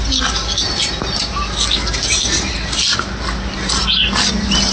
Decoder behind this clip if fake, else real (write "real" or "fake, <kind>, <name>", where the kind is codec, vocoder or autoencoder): real